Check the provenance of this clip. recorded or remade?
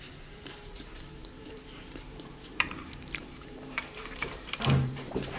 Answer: remade